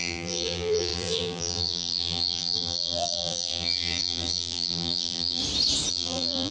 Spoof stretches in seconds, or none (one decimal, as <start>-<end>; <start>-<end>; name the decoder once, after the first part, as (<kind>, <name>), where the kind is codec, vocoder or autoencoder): 0.0-5.4 (vocoder, BigVGAN v2); 5.9-6.5